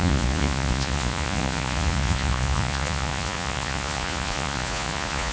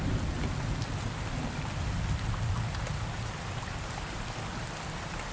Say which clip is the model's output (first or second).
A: first